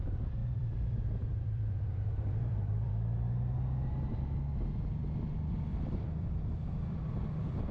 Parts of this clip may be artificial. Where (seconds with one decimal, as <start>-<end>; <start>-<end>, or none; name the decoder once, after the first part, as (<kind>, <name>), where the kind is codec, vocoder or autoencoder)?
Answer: 0.4-2.9 (vocoder, BigVGAN v2); 5.7-6.4